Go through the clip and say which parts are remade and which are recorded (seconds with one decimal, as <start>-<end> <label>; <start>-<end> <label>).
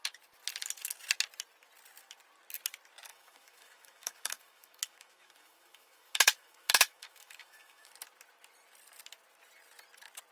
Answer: 0.0-3.1 recorded; 3.1-7.9 remade; 7.9-10.3 recorded